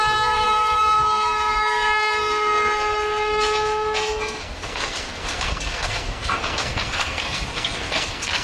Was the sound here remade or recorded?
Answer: remade